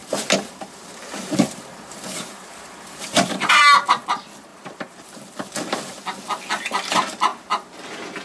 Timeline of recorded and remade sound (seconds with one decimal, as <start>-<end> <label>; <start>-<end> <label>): 0.0-3.5 remade; 3.5-4.5 recorded; 4.5-6.0 remade; 6.0-8.2 recorded